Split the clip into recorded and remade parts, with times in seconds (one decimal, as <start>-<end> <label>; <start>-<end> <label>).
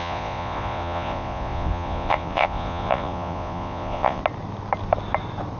0.0-4.2 remade; 4.2-5.6 recorded